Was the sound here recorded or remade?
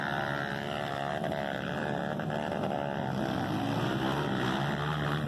recorded